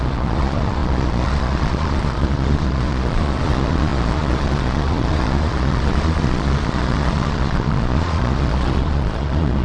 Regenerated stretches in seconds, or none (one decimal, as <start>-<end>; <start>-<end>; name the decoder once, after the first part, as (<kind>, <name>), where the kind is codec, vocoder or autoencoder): 0.0-9.6 (vocoder, Vocos)